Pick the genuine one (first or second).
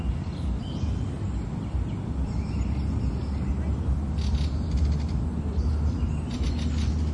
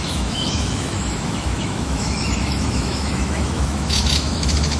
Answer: first